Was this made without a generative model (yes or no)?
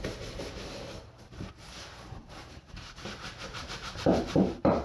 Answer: no